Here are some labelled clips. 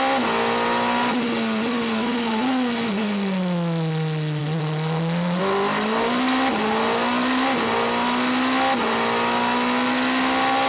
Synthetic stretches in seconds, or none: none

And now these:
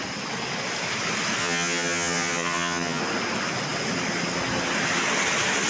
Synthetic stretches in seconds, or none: 1.4-3.0 (vocoder, HiFi-GAN)

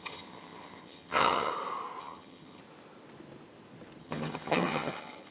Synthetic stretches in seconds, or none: 0.0-1.5 (vocoder, HiFi-GAN); 2.0-2.6; 4.0-5.3

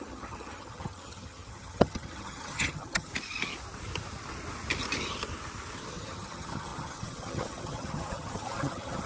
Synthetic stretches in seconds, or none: 0.0-3.1 (vocoder, HiFi-GAN); 5.9-9.1

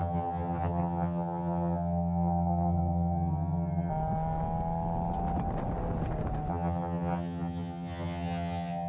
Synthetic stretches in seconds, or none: 0.0-3.9 (vocoder, HiFi-GAN); 6.5-8.9

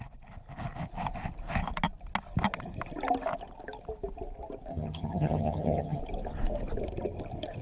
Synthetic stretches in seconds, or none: 4.7-6.0 (vocoder, HiFi-GAN)

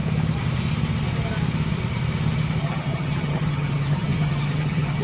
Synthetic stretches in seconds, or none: 2.6-5.0 (vocoder, HiFi-GAN)

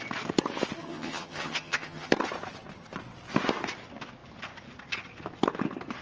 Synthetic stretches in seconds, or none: 0.8-2.1 (vocoder, HiFi-GAN)